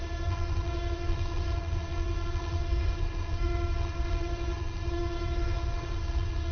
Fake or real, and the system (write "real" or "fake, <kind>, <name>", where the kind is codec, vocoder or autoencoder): fake, codec, SNAC